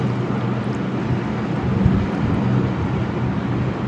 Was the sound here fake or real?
real